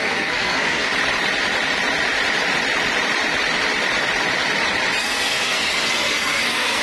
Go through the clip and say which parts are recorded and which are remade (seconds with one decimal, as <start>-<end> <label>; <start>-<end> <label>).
0.0-0.9 remade; 0.9-5.0 recorded; 5.0-6.8 remade